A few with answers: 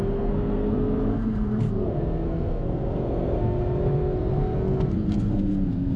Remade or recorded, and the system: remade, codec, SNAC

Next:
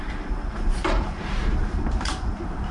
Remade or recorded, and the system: remade, vocoder, BigVGAN v2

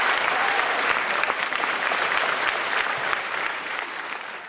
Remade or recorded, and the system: remade, vocoder, BigVGAN v2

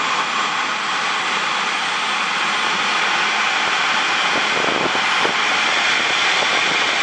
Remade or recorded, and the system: recorded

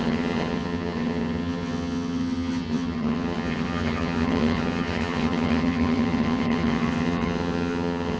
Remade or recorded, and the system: remade, vocoder, HiFi-GAN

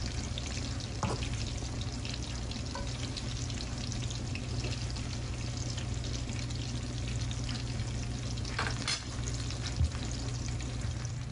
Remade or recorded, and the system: recorded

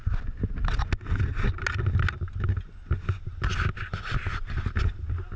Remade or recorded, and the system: recorded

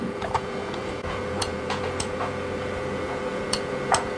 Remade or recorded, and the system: remade, vocoder, Vocos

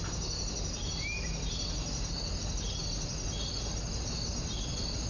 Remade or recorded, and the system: recorded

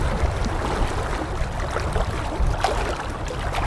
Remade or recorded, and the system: recorded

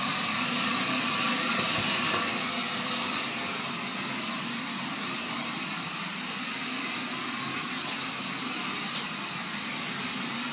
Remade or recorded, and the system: recorded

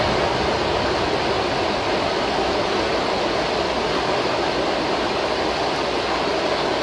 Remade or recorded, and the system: recorded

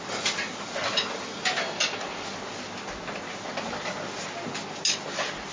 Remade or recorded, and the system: recorded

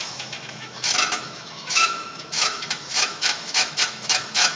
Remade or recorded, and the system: remade, autoencoder, DAC-VAE